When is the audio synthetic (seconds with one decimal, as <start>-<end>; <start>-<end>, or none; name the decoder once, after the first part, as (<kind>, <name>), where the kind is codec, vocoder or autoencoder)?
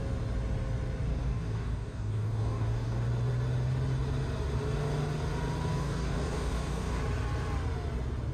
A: 1.1-3.1 (codec, DAC); 5.7-7.0